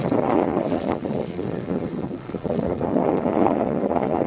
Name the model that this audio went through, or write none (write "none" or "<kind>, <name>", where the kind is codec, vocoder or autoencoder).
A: vocoder, Vocos